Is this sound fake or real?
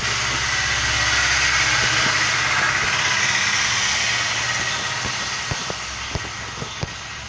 real